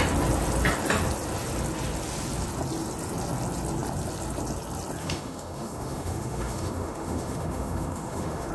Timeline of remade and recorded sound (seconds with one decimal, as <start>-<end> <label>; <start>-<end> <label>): 0.0-5.0 recorded; 5.0-8.5 remade